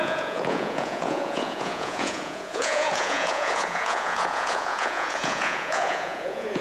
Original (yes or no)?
no